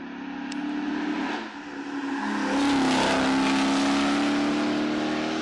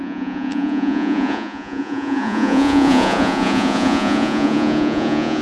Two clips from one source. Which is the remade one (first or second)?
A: second